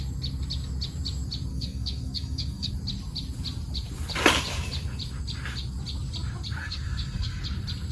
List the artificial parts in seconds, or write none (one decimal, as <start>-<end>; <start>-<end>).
1.5-2.7; 6.6-7.4